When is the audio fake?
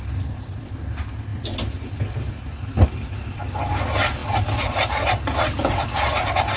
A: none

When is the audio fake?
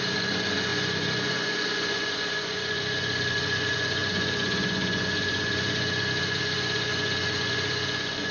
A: 0.0-8.3 (vocoder, Vocos)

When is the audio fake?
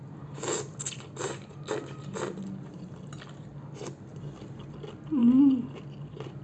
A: none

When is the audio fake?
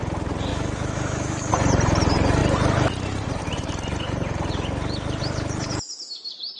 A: 0.5-1.5 (autoencoder, DAC-VAE)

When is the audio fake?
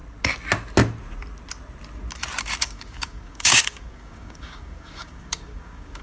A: 2.6-6.0 (codec, DAC)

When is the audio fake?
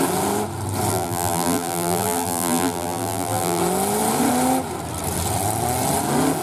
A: 0.9-3.6 (vocoder, BigVGAN v2)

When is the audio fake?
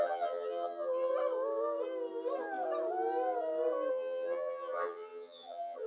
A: 0.0-1.1 (vocoder, HiFi-GAN); 3.9-5.9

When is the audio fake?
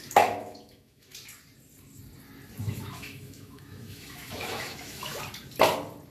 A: 0.0-1.1 (autoencoder, DAC-VAE); 2.6-5.1